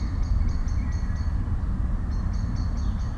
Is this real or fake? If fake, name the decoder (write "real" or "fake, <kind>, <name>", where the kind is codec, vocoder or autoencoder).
real